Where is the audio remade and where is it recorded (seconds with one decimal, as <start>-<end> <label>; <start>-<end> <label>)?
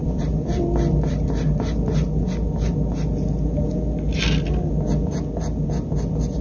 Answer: 0.0-1.1 remade; 1.1-6.4 recorded